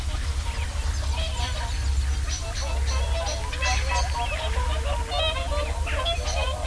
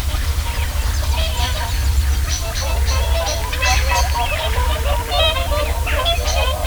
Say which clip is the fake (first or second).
second